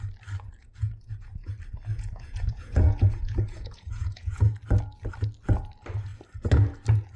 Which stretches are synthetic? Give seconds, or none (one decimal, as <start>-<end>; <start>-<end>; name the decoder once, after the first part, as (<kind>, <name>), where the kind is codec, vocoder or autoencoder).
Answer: 0.6-1.5 (vocoder, Vocos); 1.9-4.4